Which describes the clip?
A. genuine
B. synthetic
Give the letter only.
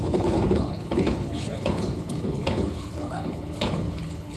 B